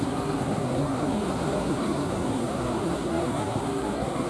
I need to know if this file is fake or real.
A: fake